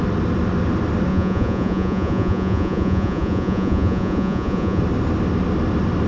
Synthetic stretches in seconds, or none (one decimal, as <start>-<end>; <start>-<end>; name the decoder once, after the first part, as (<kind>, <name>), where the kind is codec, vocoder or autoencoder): 1.1-4.8 (vocoder, Vocos)